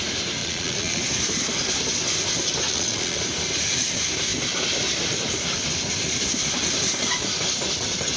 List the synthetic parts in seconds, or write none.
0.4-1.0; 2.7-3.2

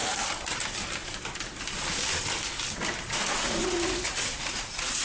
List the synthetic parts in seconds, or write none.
3.0-5.0